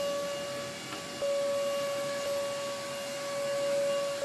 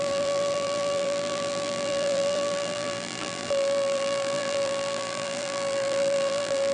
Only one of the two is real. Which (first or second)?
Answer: first